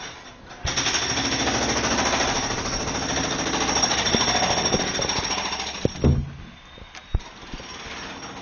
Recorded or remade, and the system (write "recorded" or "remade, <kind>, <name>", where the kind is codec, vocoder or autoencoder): recorded